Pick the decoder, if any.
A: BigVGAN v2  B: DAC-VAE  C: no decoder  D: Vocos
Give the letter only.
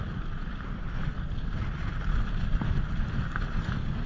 C